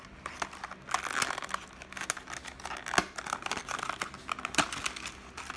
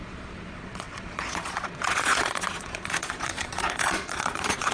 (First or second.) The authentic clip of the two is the first